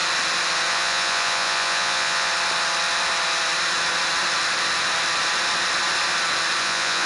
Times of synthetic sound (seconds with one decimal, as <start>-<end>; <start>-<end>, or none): 0.7-2.3; 6.6-7.1